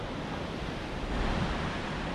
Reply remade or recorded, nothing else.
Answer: recorded